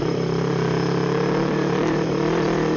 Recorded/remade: remade